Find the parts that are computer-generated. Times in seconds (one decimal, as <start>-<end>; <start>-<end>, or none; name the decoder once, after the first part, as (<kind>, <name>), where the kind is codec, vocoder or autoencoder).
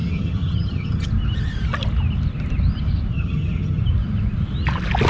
0.0-1.1 (vocoder, HiFi-GAN); 3.1-3.8